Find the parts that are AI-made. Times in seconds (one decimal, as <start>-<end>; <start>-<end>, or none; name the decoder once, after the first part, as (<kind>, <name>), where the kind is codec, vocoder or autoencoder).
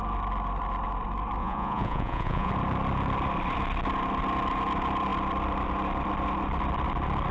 1.4-2.5 (vocoder, Vocos)